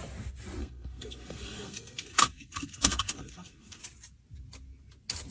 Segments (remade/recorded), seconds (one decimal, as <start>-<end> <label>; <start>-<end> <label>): 0.0-0.6 recorded; 0.6-3.8 remade; 3.8-5.3 recorded